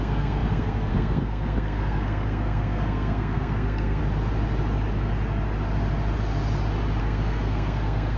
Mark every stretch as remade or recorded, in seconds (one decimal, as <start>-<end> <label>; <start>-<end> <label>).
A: 0.0-4.0 remade; 4.0-7.0 recorded; 7.0-8.2 remade